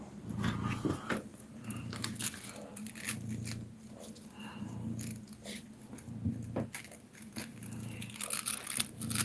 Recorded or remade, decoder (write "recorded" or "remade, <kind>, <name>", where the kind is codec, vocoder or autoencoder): recorded